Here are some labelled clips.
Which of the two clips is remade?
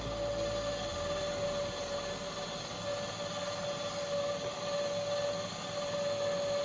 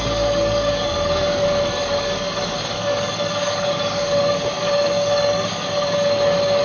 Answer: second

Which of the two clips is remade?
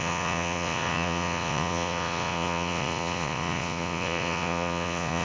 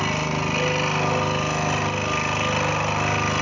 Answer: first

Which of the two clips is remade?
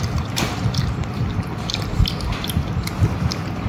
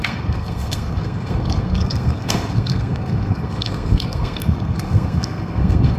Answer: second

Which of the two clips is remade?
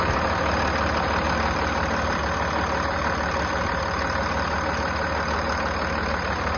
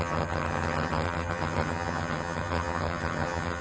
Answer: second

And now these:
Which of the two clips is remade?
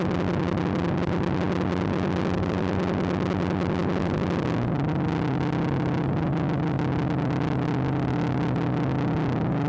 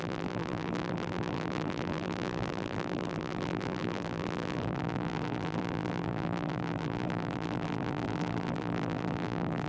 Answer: second